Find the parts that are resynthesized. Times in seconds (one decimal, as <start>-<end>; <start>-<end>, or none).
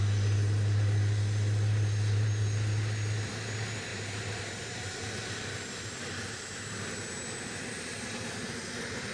3.9-8.7